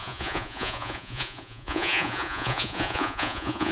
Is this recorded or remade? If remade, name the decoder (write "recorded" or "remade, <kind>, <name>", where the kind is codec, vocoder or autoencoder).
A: remade, vocoder, Vocos